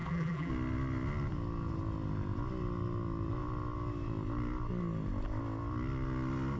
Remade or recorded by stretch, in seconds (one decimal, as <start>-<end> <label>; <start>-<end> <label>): 0.0-0.5 remade; 0.5-6.6 recorded